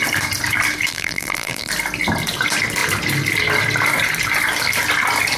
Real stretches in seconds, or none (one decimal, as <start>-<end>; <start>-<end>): 0.0-0.9; 1.7-5.4